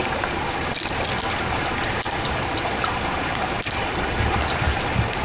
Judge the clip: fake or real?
real